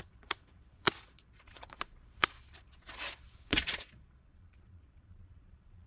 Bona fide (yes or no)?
no